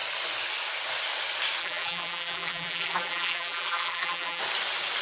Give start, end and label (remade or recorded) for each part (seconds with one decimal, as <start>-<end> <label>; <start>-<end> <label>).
0.0-1.6 recorded; 1.6-4.4 remade; 4.4-5.0 recorded